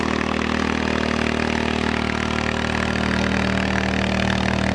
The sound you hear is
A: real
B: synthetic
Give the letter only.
A